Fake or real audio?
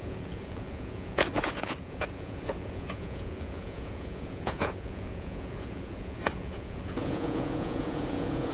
fake